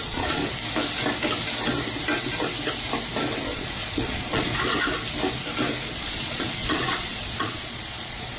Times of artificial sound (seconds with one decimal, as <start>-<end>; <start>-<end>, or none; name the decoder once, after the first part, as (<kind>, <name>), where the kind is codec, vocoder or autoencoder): 0.0-0.4 (vocoder, Vocos); 3.4-4.5; 6.0-8.4